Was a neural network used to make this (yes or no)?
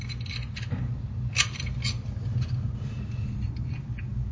no